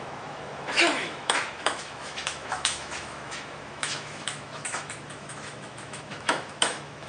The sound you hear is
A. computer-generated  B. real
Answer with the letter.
A